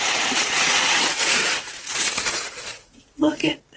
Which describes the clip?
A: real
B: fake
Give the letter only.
B